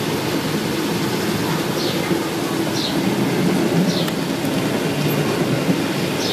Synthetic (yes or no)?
no